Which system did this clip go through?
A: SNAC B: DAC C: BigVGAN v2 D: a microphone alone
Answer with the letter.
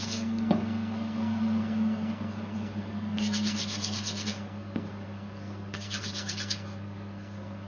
A